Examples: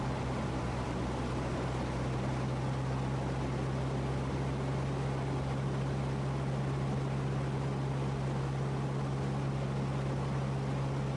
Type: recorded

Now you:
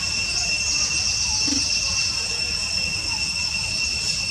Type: recorded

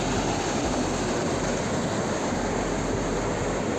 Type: recorded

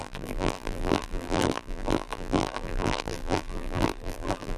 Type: remade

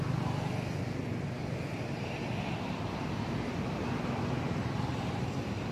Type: recorded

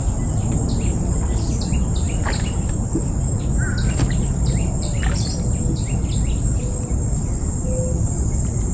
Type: recorded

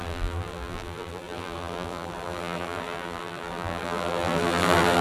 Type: remade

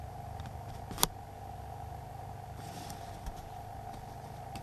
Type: remade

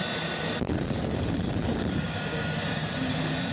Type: remade